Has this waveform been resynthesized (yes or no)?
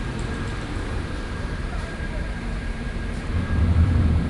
yes